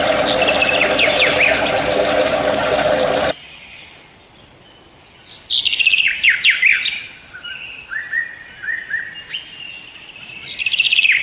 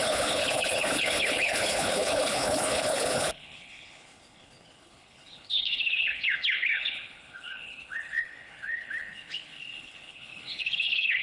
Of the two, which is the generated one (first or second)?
second